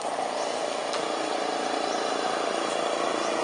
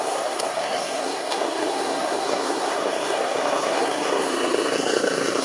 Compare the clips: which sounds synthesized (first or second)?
second